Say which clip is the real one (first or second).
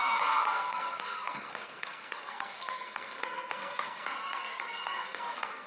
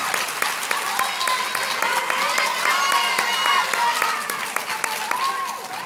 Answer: second